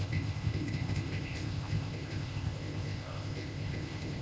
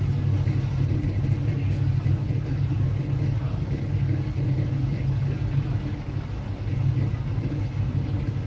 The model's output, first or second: first